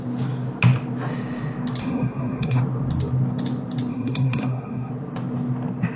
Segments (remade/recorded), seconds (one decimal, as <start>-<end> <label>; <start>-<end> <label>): 0.0-1.8 recorded; 1.8-2.6 remade; 2.6-3.9 recorded; 3.9-4.9 remade; 4.9-6.0 recorded